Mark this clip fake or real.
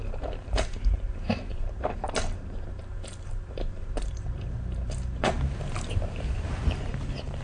fake